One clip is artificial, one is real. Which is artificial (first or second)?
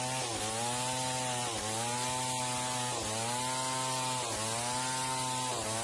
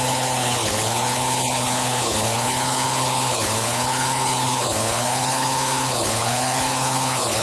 second